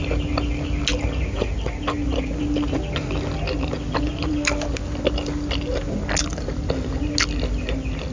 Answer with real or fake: real